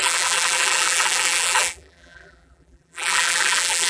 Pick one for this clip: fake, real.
fake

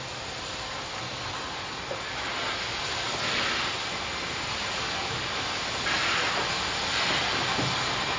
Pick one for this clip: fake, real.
real